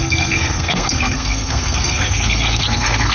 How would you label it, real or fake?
fake